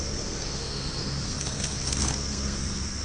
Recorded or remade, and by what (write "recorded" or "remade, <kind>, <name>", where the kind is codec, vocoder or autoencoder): remade, codec, SNAC